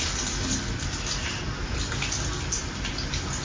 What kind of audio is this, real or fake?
real